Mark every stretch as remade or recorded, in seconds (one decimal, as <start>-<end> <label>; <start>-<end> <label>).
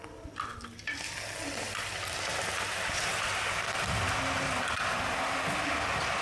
0.0-6.2 recorded